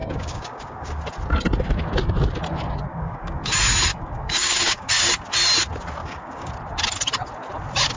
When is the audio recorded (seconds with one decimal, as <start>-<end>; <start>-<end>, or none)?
1.0-2.9; 3.5-3.9; 4.9-6.0; 6.5-8.0